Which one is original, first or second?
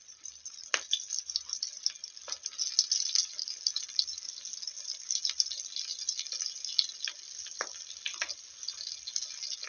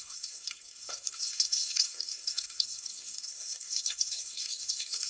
first